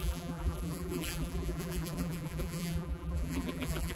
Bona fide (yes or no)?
no